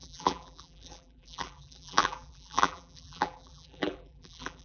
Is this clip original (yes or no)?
no